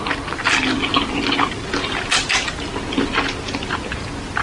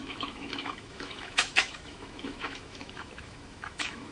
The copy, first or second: second